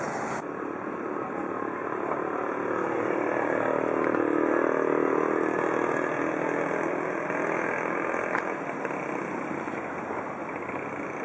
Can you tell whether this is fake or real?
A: real